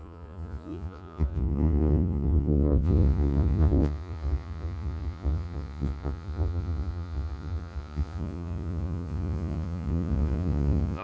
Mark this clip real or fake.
fake